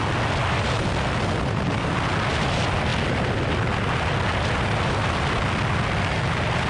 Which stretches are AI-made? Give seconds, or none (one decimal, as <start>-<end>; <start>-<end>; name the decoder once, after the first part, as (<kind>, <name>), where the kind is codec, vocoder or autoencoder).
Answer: none